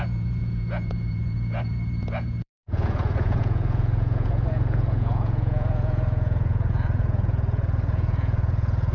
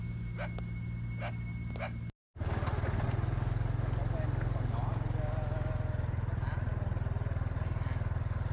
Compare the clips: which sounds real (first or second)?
second